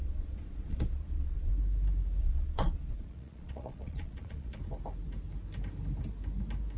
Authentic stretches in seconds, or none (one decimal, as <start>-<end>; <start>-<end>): 1.5-2.2; 4.6-6.8

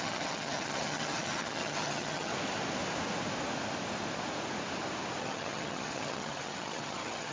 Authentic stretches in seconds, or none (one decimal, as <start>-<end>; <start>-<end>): 2.3-5.2

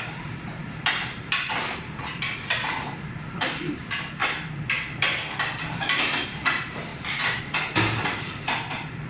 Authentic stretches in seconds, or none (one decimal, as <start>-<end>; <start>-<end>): 4.2-5.7; 6.9-7.4

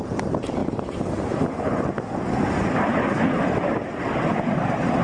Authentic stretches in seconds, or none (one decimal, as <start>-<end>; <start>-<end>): 0.0-5.0

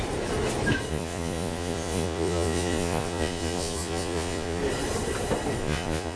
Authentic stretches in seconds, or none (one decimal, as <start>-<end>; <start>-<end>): 0.0-0.9; 4.6-5.6

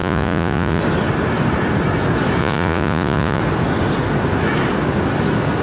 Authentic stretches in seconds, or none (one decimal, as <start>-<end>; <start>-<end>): 0.8-2.4; 3.4-5.6